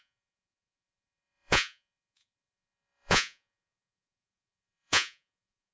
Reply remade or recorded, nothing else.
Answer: remade